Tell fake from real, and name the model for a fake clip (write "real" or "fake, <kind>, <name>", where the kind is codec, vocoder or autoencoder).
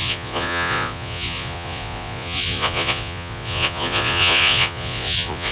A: fake, vocoder, Vocos